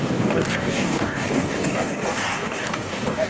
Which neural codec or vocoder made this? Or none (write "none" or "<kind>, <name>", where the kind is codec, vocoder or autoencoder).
codec, DAC